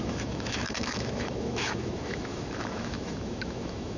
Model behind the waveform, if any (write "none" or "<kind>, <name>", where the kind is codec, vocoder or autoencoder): autoencoder, DAC-VAE